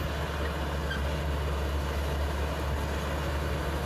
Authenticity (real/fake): real